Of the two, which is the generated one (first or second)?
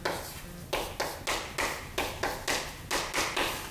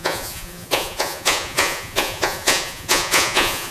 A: second